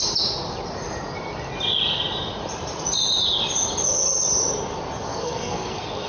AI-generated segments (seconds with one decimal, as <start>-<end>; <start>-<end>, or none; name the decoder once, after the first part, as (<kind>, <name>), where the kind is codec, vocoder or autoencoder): 5.1-6.1 (codec, SNAC)